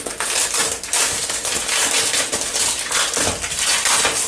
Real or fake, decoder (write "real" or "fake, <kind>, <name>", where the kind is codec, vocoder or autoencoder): real